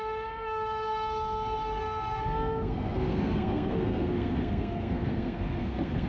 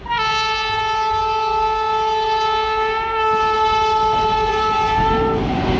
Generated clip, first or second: first